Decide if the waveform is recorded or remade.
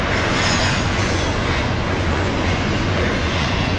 remade